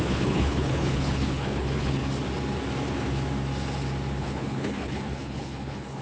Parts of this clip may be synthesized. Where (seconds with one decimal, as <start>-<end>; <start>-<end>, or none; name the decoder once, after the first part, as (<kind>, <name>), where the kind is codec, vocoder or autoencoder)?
0.0-2.0 (codec, HILCodec); 4.2-6.0